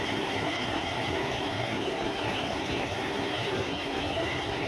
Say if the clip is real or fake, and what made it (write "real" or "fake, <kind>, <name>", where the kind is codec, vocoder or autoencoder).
fake, codec, SNAC